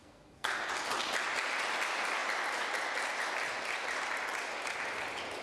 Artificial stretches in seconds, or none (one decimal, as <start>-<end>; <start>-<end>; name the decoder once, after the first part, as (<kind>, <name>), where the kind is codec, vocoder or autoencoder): 0.0-0.7 (codec, SNAC)